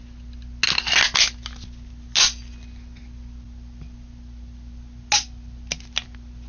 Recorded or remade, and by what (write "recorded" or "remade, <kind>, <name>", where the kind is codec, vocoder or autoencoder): recorded